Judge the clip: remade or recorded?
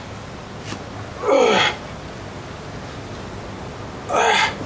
recorded